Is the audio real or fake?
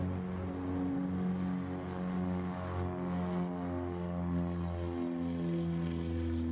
real